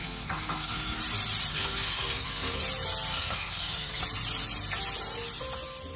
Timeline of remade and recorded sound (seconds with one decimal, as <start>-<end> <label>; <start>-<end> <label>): 0.0-1.0 remade; 1.0-1.5 recorded; 1.5-2.6 remade; 2.6-3.1 recorded; 3.1-4.0 remade; 4.0-6.0 recorded